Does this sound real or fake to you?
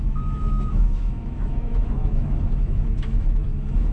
fake